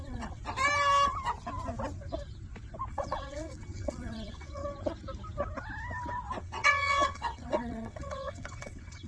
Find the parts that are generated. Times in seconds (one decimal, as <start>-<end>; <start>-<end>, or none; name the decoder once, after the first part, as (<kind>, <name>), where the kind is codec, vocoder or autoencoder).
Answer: 0.0-0.4 (vocoder, WaveNeXt); 2.9-4.6; 6.4-9.1